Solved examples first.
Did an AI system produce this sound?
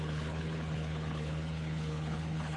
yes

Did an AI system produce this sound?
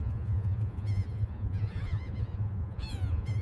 yes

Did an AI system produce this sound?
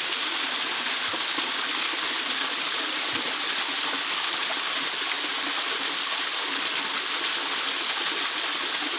no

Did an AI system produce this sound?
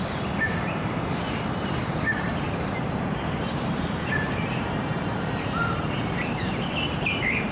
yes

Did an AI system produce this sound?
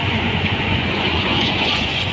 yes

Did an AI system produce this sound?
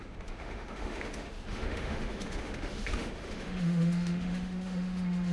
yes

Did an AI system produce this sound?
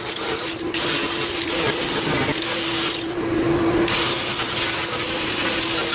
no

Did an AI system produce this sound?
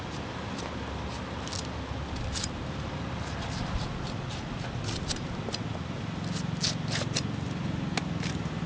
no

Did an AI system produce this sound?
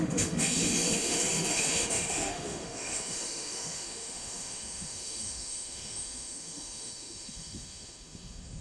yes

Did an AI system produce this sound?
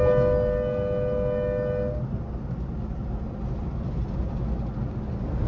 no